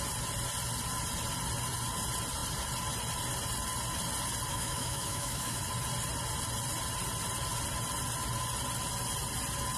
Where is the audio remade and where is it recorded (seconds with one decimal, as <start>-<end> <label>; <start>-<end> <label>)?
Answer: 0.0-4.5 recorded; 4.5-5.6 remade; 5.6-9.8 recorded

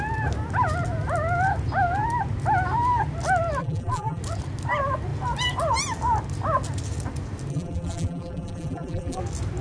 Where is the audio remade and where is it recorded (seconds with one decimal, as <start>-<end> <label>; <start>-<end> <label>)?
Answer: 0.0-3.6 recorded; 3.6-4.2 remade; 4.2-7.5 recorded; 7.5-9.2 remade; 9.2-9.6 recorded

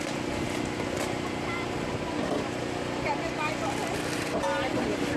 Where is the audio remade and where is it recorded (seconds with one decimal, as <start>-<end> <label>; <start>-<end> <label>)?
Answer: 0.0-5.2 recorded

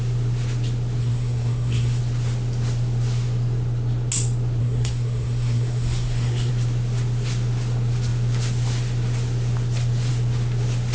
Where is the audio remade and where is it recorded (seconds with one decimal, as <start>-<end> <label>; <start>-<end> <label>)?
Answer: 0.0-1.0 recorded; 1.0-2.0 remade; 2.0-4.6 recorded; 4.6-6.5 remade; 6.5-10.9 recorded

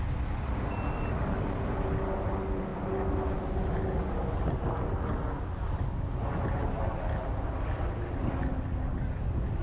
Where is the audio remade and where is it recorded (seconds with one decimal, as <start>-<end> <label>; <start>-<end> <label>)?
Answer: 0.0-9.6 recorded

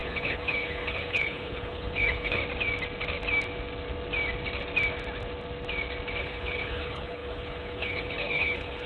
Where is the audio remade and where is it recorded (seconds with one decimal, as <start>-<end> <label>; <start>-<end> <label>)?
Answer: 0.0-2.4 remade; 2.4-6.2 recorded; 6.2-8.9 remade

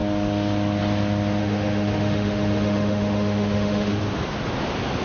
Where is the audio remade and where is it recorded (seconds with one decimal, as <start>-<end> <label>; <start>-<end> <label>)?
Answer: 0.0-1.4 recorded; 1.4-3.9 remade; 3.9-5.0 recorded